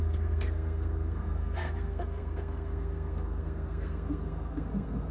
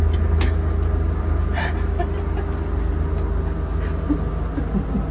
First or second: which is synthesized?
first